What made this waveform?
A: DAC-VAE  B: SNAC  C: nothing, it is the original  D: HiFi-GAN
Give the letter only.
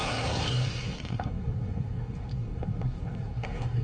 B